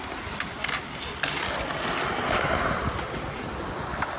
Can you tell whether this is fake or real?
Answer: real